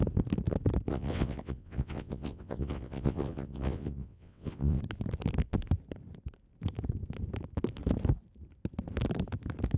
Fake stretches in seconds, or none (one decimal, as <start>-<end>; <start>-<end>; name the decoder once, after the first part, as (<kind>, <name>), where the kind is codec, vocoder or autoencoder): 0.9-4.8 (vocoder, WaveNeXt)